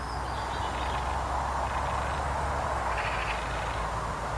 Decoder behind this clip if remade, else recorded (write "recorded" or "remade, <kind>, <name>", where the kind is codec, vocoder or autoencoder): recorded